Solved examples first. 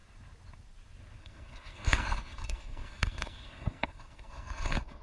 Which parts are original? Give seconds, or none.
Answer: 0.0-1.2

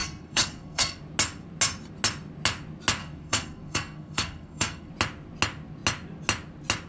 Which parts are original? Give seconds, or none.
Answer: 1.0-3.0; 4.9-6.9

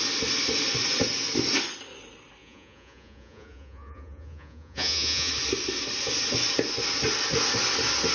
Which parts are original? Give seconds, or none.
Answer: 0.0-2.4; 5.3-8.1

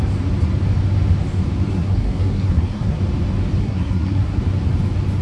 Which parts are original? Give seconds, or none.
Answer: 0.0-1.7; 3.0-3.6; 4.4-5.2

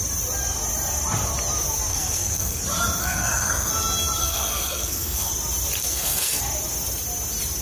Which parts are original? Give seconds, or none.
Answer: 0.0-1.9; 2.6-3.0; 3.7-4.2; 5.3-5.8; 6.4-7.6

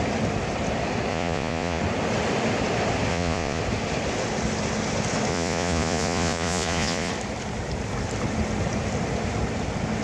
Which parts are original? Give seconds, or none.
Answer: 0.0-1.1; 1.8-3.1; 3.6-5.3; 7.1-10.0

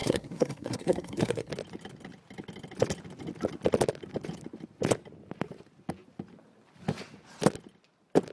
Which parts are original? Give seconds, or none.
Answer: 1.5-8.3